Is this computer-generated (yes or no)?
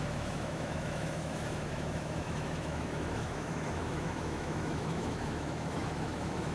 yes